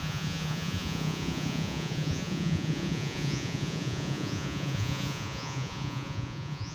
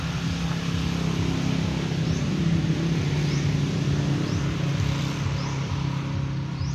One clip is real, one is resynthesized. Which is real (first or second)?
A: second